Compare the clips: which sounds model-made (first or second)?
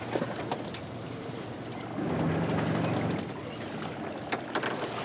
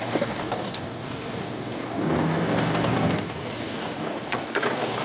second